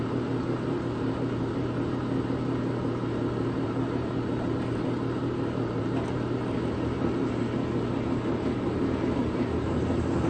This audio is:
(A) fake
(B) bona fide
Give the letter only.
A